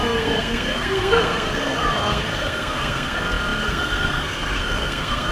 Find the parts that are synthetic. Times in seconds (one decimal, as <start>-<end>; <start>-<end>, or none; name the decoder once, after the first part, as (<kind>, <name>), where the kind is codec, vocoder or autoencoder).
0.0-3.2 (codec, SNAC); 3.6-5.3